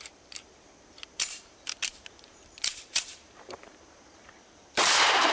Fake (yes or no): yes